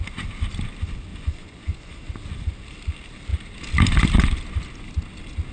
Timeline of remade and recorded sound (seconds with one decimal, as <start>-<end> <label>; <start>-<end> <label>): 0.0-1.1 recorded; 1.1-2.1 remade; 2.1-5.5 recorded